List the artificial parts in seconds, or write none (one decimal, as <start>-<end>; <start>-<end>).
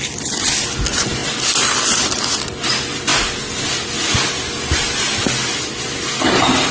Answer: none